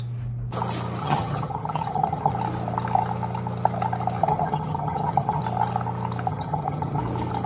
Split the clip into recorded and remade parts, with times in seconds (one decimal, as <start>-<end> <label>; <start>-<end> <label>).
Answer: 0.0-1.0 recorded; 1.0-2.3 remade; 2.3-4.2 recorded; 4.2-5.4 remade; 5.4-6.3 recorded; 6.3-7.0 remade; 7.0-7.5 recorded